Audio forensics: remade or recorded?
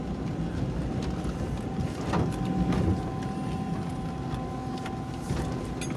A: recorded